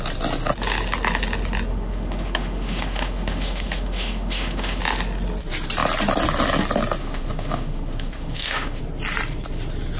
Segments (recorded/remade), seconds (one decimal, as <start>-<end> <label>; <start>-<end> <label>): 0.0-1.7 recorded; 1.7-4.8 remade; 4.8-7.0 recorded; 7.0-8.8 remade; 8.8-10.0 recorded